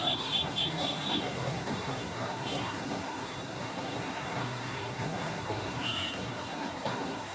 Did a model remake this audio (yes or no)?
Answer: yes